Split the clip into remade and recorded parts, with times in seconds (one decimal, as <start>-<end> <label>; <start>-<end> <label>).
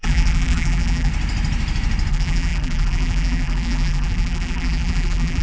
0.0-1.1 remade; 1.1-2.1 recorded; 2.1-5.4 remade